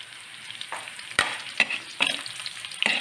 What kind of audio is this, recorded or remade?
remade